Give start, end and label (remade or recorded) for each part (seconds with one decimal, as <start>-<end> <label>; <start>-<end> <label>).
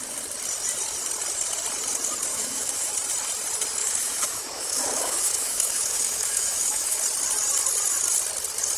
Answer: 0.0-2.3 recorded; 2.3-2.9 remade; 2.9-3.8 recorded; 3.8-7.0 remade; 7.0-8.8 recorded